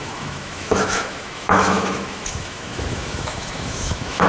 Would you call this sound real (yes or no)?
no